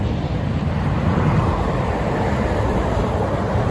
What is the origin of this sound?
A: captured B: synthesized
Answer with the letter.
B